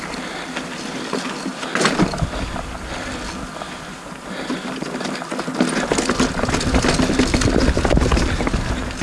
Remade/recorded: recorded